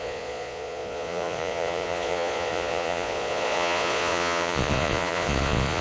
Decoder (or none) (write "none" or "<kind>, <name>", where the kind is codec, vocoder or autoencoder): vocoder, Vocos